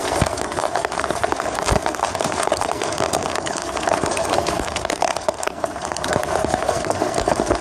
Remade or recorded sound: remade